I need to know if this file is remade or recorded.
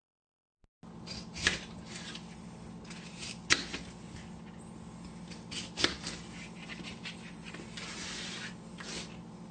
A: recorded